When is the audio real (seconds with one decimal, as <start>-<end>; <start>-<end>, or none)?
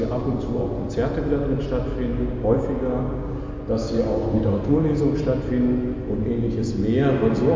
0.0-2.1; 3.4-3.8; 5.0-7.6